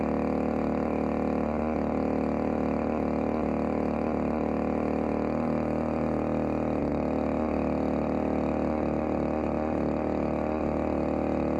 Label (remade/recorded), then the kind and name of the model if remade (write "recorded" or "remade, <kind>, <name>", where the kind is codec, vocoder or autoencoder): recorded